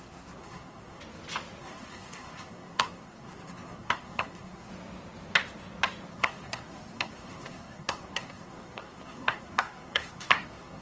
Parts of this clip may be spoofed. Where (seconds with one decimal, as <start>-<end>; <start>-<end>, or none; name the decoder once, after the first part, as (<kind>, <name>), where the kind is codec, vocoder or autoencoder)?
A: 0.0-1.0 (codec, SNAC); 1.6-4.7; 6.1-10.8